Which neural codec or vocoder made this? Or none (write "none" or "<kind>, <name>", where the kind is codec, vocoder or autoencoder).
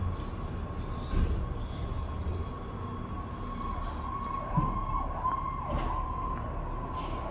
none